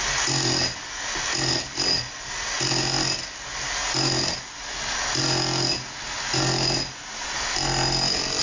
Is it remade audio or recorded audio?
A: recorded